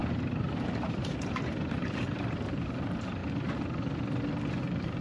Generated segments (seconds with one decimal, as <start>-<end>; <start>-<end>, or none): 0.9-3.2; 4.6-5.0